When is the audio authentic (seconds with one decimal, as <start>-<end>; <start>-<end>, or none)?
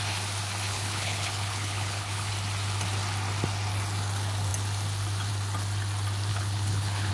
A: 0.0-0.7; 2.3-6.3